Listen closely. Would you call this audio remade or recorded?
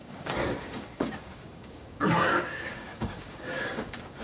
remade